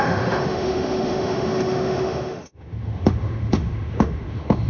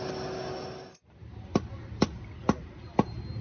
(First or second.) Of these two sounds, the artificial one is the first